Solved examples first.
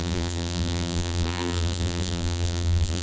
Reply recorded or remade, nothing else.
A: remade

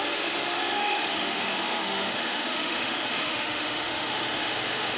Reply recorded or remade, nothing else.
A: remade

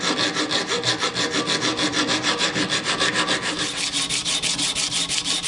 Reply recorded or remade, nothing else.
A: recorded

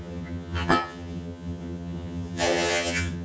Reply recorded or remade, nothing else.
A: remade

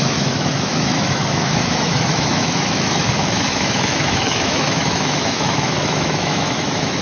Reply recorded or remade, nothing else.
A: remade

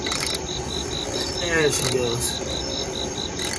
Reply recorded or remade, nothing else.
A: remade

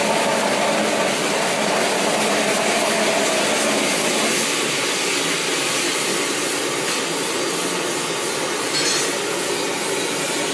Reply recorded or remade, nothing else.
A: recorded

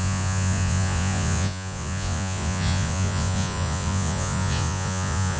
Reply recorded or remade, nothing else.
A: remade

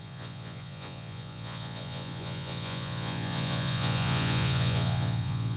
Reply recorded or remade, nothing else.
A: remade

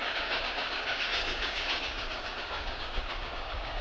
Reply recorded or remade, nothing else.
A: remade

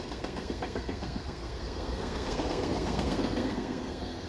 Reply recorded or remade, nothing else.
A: remade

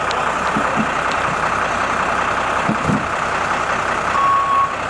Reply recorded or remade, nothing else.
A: recorded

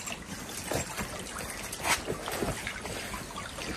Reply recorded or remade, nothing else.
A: recorded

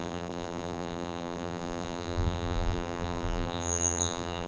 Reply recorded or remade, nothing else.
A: remade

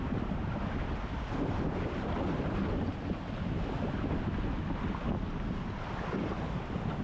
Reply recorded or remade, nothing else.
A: recorded